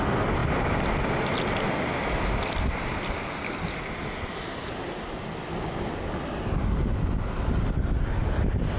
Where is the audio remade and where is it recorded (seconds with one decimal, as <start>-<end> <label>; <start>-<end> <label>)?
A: 0.0-8.8 recorded